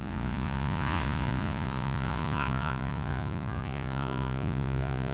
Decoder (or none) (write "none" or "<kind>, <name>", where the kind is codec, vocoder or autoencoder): vocoder, Vocos